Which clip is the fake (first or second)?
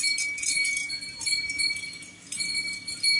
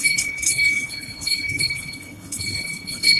second